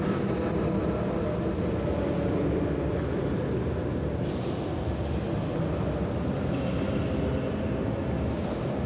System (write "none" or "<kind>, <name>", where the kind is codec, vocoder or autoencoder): none